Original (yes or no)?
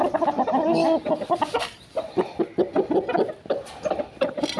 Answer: yes